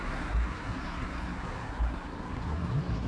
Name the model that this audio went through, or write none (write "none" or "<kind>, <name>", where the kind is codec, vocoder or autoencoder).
codec, SNAC